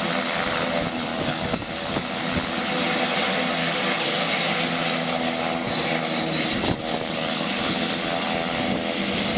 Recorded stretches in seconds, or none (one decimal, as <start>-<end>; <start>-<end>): 0.0-1.1; 1.9-3.6; 4.3-6.9; 7.6-9.4